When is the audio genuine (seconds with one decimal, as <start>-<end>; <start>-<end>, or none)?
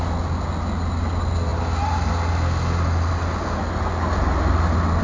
0.0-5.0